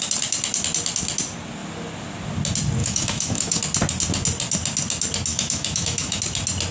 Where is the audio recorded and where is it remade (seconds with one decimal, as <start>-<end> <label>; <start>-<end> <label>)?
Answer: 0.0-2.8 recorded; 2.8-3.6 remade; 3.6-5.3 recorded; 5.3-6.2 remade; 6.2-6.7 recorded